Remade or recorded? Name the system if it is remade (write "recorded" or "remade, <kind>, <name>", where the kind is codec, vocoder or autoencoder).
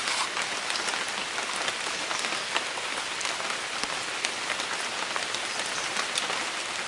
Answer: recorded